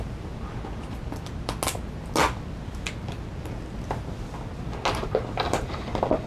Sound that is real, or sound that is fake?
real